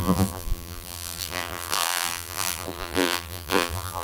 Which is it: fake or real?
fake